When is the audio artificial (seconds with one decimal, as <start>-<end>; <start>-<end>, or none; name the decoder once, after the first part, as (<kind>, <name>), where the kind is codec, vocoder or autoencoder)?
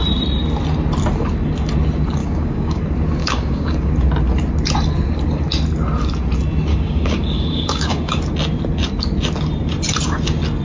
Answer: 2.2-2.8 (codec, DAC); 3.2-3.9; 6.7-8.2